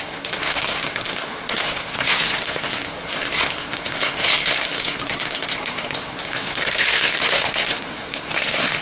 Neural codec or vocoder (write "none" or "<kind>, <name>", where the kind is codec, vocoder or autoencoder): codec, SNAC